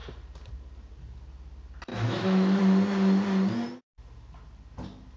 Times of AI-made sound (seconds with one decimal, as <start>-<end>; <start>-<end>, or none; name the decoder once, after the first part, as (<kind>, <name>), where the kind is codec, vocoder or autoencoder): 1.9-2.6 (autoencoder, DAC-VAE)